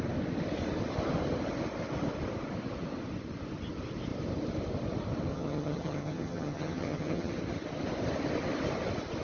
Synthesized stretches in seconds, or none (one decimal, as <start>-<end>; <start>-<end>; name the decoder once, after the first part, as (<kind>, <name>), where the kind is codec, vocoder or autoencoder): 5.3-7.3 (vocoder, HiFi-GAN)